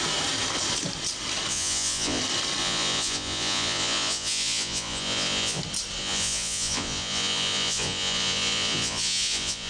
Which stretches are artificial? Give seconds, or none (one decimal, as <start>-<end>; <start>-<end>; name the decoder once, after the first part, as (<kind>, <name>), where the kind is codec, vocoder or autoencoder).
1.5-2.2 (vocoder, Vocos); 2.6-5.6; 6.0-9.7